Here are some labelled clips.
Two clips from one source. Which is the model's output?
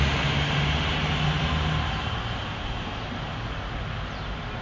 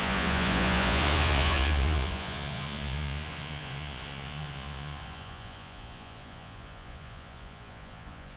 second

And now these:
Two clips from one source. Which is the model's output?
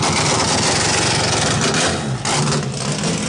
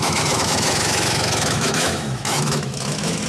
second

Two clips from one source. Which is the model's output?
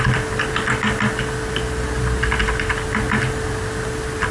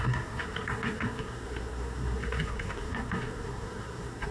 second